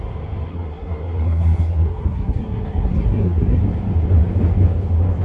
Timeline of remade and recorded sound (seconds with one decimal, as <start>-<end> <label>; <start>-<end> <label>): 0.0-0.5 recorded; 0.5-3.6 remade; 3.6-5.2 recorded